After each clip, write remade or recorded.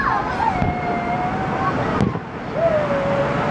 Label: recorded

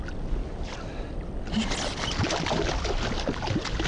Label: recorded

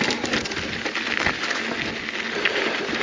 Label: recorded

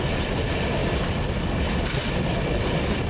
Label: recorded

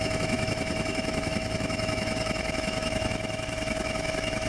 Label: remade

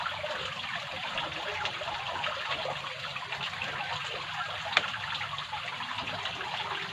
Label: remade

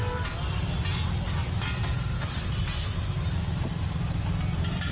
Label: recorded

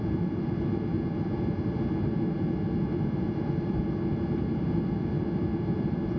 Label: recorded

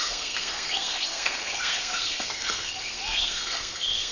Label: remade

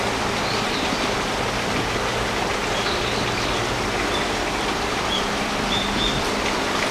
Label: recorded